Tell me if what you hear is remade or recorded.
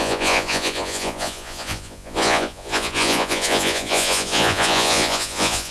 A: remade